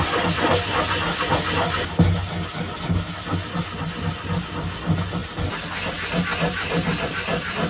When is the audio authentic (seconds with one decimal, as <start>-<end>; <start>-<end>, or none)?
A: 0.0-7.7